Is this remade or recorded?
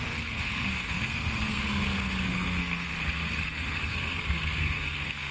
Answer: remade